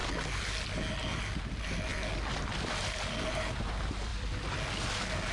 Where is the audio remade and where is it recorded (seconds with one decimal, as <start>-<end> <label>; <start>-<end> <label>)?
0.0-5.3 recorded